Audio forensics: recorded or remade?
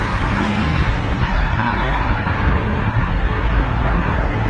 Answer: remade